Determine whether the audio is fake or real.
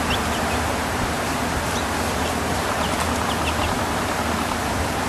real